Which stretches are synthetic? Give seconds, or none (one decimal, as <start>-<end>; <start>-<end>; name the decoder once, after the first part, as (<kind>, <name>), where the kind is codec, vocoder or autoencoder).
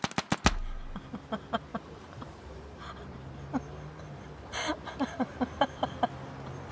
1.7-3.3 (vocoder, BigVGAN v2)